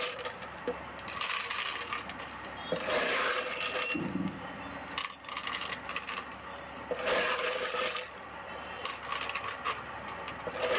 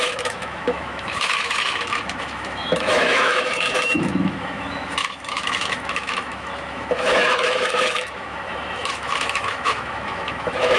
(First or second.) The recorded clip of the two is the first